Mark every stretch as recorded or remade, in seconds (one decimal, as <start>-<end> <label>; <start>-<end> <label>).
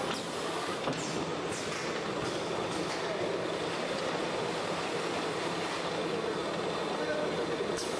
0.0-8.0 recorded